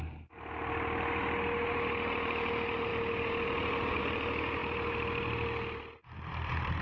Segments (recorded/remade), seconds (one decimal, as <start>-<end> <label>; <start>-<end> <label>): 0.0-6.8 recorded